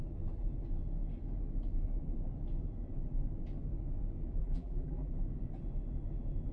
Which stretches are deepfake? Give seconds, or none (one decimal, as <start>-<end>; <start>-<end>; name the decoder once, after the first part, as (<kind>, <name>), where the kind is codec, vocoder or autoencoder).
4.4-5.1 (vocoder, BigVGAN v2)